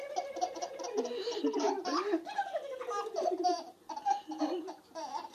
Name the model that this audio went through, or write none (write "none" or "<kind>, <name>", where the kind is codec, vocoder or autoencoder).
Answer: vocoder, BigVGAN v2